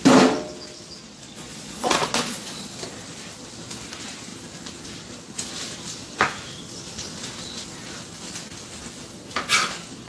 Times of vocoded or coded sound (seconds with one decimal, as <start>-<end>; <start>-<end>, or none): 1.0-2.7

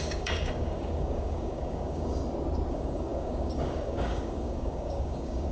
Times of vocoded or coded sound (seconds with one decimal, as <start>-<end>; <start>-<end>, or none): 0.0-2.2; 2.7-5.5

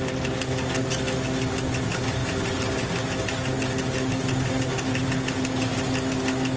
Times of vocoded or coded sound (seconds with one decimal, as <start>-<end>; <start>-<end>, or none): none

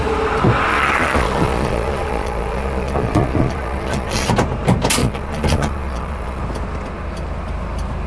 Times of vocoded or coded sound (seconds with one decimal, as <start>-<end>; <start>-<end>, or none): 0.7-4.3; 5.0-6.4

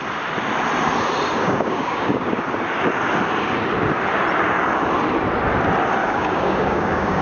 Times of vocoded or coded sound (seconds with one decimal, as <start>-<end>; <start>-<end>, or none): 1.4-2.4; 6.0-7.2

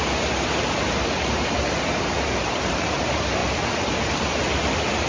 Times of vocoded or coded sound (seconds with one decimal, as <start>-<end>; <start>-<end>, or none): 0.0-3.4

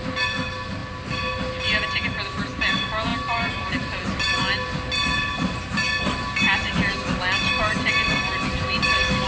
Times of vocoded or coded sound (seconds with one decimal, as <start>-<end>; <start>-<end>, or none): none